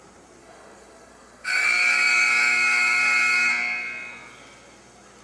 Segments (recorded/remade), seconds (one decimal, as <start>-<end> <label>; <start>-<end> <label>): 0.0-0.4 recorded; 0.4-3.5 remade; 3.5-5.2 recorded

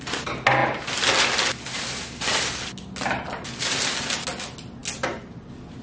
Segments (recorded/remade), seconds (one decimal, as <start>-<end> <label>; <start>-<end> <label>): 0.0-5.8 recorded

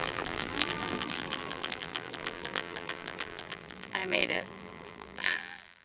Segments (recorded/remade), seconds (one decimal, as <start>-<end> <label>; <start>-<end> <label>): 0.0-5.8 remade

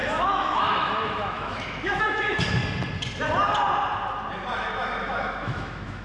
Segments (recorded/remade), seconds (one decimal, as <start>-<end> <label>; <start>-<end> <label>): 0.0-2.6 remade; 2.6-4.6 recorded; 4.6-6.0 remade

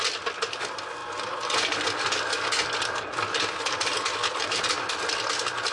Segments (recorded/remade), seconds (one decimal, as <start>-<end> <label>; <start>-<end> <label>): 0.0-5.7 recorded